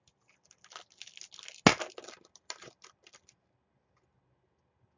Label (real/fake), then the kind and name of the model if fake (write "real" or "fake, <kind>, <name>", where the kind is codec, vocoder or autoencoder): real